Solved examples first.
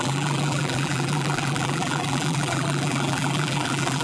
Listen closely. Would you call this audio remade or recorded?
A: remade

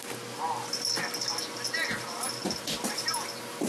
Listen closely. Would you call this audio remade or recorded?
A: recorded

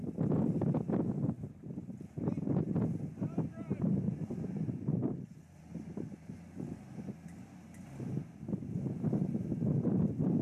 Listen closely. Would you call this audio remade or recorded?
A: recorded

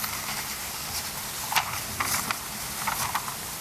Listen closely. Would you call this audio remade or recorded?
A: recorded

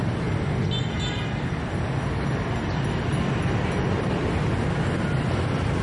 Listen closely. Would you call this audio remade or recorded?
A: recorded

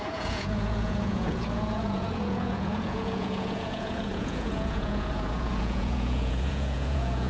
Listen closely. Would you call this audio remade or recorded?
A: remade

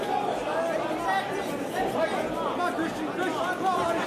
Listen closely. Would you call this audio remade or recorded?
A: recorded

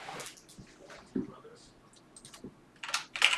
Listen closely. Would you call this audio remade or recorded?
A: recorded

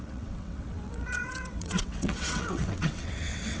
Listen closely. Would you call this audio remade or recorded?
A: remade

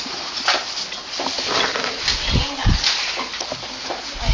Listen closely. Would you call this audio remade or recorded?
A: recorded